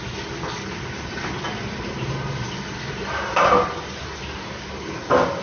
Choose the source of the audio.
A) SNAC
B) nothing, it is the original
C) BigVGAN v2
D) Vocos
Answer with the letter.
B